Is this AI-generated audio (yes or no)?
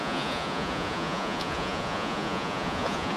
yes